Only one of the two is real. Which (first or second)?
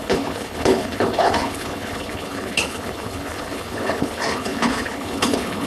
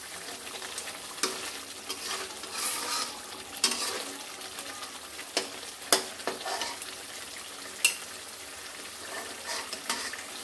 second